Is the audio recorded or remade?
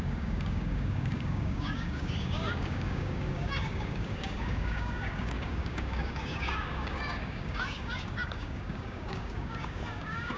remade